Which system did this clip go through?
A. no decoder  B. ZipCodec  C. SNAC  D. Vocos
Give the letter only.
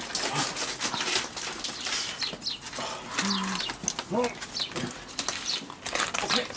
A